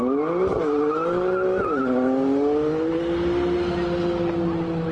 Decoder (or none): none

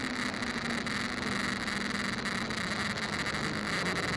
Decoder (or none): none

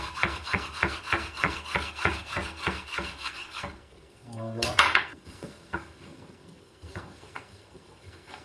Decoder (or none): codec, SNAC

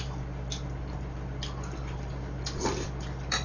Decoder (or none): vocoder, BigVGAN v2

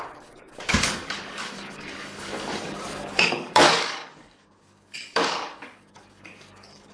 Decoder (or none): codec, DAC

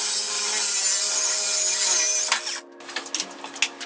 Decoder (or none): none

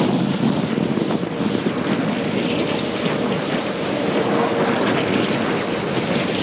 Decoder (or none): none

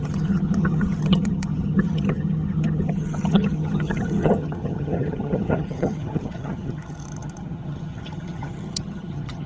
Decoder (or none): vocoder, HiFi-GAN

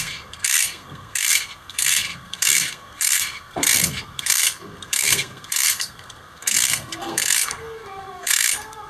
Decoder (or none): codec, SNAC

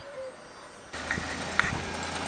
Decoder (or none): none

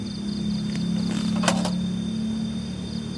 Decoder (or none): none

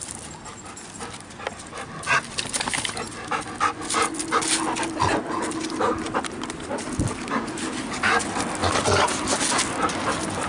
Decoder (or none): none